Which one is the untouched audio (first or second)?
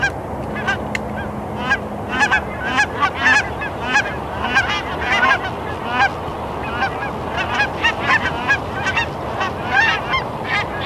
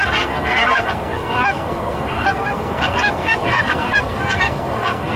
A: first